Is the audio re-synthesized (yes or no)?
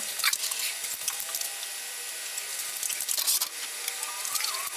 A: no